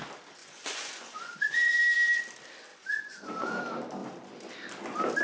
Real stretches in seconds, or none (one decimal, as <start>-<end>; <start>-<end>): 0.0-0.4; 1.8-2.7; 3.6-5.2